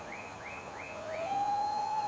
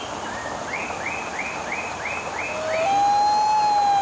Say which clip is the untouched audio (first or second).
second